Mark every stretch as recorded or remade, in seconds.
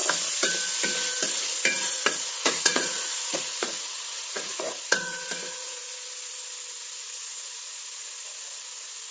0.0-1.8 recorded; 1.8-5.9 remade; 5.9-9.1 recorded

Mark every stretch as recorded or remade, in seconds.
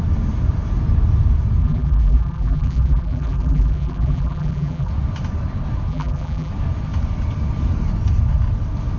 0.0-1.6 recorded; 1.6-4.9 remade; 4.9-5.9 recorded; 5.9-6.5 remade; 6.5-9.0 recorded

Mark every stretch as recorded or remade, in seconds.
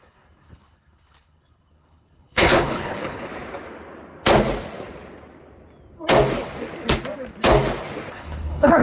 0.0-3.3 remade; 3.3-8.1 recorded; 8.1-8.8 remade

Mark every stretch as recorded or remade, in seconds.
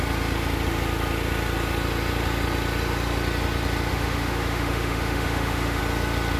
0.0-3.9 recorded; 3.9-5.8 remade; 5.8-6.4 recorded